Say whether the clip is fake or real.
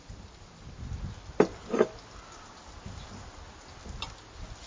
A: real